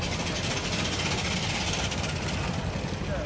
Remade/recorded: recorded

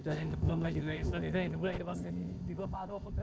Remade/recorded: remade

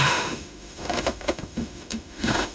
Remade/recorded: remade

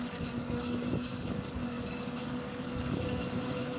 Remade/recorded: remade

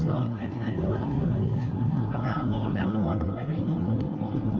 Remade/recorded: remade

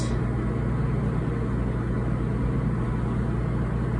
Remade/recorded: recorded